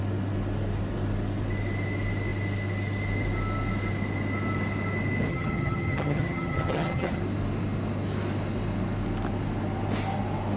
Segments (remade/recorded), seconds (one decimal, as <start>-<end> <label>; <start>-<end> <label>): 0.0-5.3 recorded; 5.3-7.2 remade; 7.2-10.6 recorded